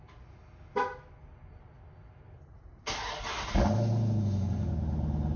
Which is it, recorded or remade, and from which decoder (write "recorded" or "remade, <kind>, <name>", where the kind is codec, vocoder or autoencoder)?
recorded